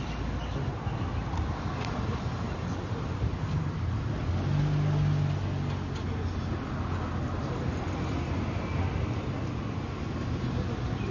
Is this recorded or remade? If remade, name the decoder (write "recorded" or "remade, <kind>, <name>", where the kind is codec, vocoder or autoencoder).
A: recorded